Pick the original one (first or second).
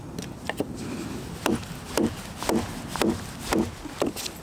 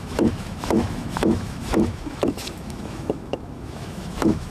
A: first